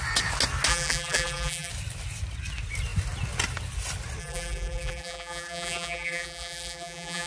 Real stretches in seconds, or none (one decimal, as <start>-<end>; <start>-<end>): 0.0-0.7; 1.7-4.2